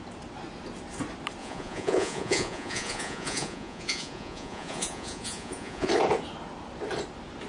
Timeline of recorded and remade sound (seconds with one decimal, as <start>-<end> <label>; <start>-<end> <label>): 0.0-1.4 recorded; 1.4-5.9 remade; 5.9-7.5 recorded